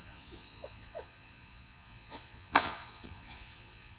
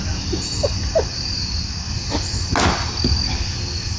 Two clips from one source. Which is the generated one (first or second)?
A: first